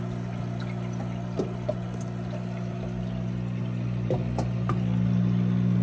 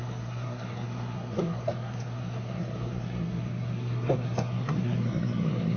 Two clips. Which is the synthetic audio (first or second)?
second